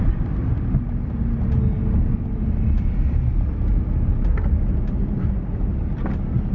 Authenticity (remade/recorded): recorded